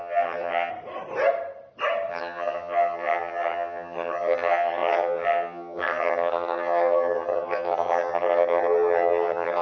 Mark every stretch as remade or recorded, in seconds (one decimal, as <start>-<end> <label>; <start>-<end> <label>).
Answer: 0.0-0.7 remade; 0.7-2.1 recorded; 2.1-9.6 remade